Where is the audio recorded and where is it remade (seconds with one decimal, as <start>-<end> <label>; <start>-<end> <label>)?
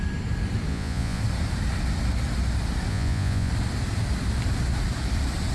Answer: 0.0-0.7 recorded; 0.7-1.2 remade; 1.2-2.9 recorded; 2.9-3.5 remade; 3.5-5.5 recorded